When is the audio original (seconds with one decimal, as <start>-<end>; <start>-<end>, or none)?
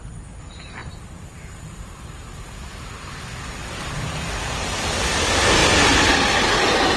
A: 0.0-0.8; 5.0-7.0